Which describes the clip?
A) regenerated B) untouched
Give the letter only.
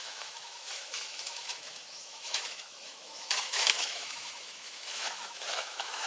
A